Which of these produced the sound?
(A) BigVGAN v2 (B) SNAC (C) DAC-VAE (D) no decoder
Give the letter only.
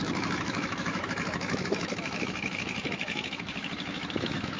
C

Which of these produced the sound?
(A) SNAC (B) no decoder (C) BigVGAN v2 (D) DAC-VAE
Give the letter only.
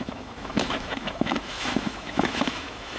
D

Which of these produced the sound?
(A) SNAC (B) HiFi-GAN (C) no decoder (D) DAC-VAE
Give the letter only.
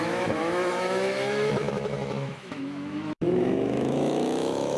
D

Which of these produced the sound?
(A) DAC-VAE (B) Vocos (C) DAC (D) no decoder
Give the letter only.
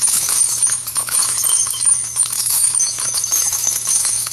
A